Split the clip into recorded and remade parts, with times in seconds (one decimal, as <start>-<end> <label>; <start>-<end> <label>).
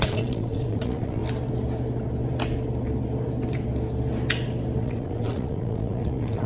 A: 0.0-1.2 remade; 1.2-4.8 recorded; 4.8-6.5 remade